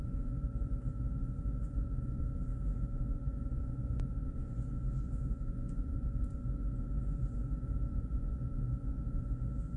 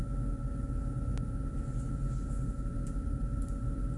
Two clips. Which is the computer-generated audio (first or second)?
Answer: first